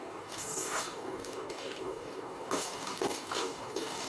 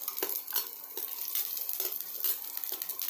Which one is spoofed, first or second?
first